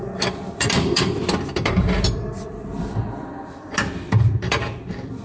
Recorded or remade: remade